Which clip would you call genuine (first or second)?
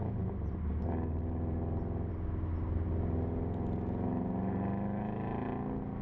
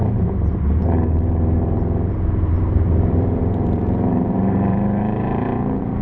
first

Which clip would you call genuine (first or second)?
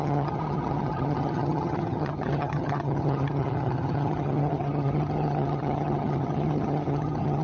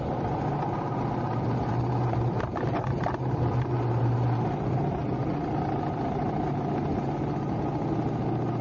second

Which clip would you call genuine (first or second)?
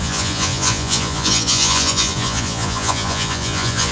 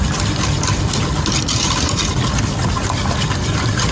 second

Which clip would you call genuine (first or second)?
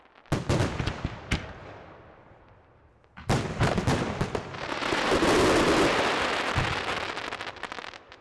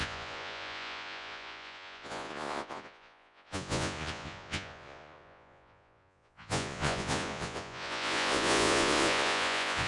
first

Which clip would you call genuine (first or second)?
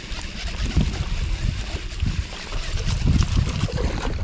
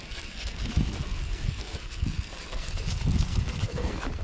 first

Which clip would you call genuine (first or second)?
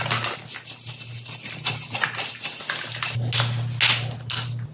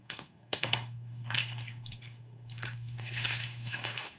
first